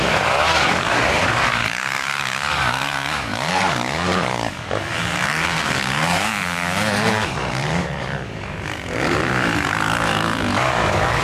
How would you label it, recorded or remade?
remade